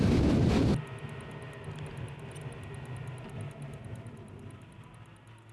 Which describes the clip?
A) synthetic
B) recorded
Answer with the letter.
B